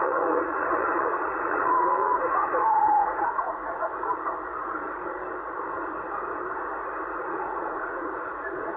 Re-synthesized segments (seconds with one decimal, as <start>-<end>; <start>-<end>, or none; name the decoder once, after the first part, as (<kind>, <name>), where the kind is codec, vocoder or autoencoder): 0.0-3.9 (vocoder, Vocos); 7.2-8.8